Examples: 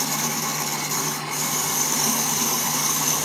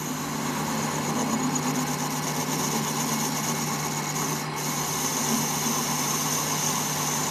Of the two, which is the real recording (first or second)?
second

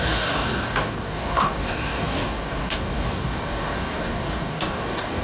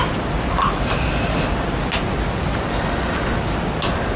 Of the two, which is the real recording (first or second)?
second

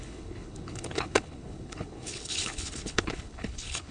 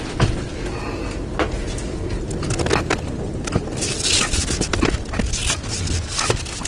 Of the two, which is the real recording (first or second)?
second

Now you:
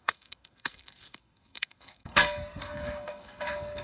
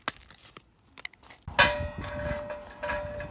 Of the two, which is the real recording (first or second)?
second